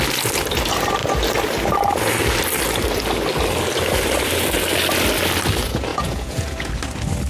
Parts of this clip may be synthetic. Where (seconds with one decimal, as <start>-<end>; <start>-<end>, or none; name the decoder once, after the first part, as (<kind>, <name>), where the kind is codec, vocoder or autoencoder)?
5.9-6.7 (vocoder, Vocos)